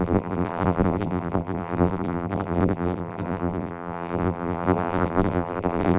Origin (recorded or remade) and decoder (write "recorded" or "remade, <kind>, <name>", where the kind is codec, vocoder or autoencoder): remade, vocoder, BigVGAN v2